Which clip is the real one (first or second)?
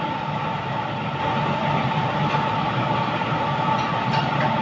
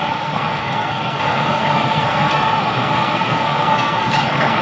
first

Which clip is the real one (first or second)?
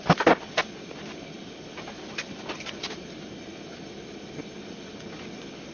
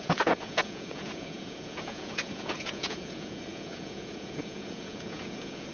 first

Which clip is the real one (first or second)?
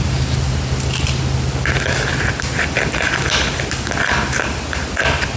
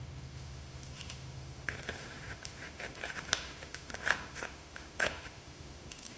first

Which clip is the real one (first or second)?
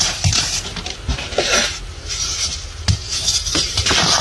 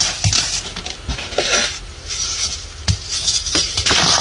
second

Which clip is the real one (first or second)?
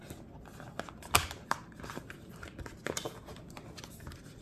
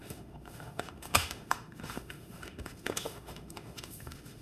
first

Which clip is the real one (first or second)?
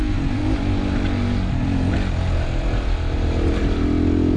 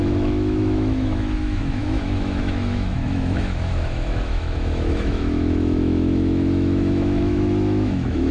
first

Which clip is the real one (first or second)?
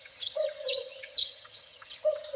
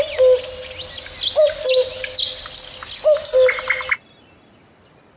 second